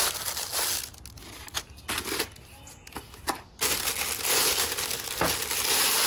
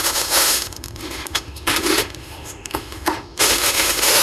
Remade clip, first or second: second